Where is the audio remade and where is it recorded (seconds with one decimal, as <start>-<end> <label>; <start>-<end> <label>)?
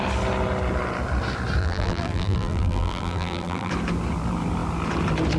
0.0-1.6 recorded; 1.6-3.7 remade; 3.7-5.4 recorded